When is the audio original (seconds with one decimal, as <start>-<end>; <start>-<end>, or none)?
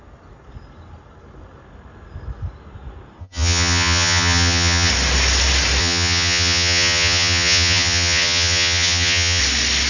0.0-3.2; 4.9-5.8; 9.4-9.9